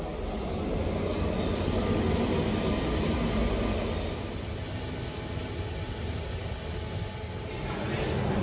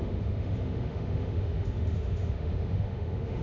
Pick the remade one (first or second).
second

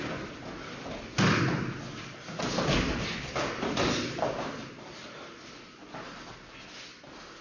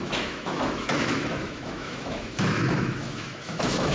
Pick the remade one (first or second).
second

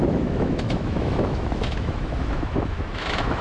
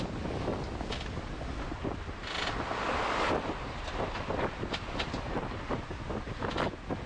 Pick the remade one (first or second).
first